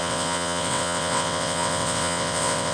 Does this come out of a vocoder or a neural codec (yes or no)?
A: yes